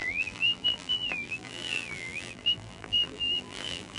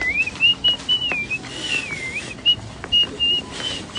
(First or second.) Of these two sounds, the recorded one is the second